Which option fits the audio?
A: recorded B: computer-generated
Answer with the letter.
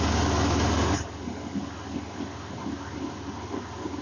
A